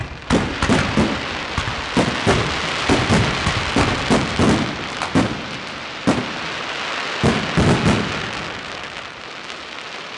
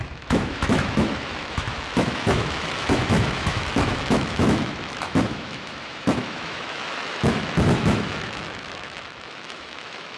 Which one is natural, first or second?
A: first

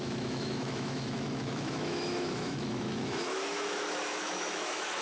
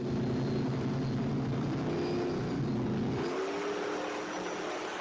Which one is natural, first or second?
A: second